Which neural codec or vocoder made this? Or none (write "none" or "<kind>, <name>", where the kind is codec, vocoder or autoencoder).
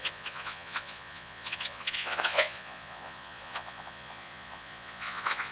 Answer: vocoder, Vocos